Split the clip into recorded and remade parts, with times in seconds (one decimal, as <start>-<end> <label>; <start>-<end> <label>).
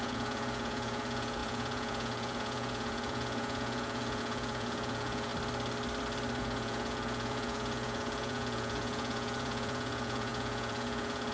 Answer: 0.0-5.3 remade; 5.3-6.4 recorded; 6.4-11.3 remade